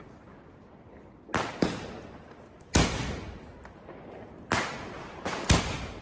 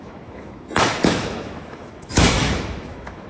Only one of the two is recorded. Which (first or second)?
first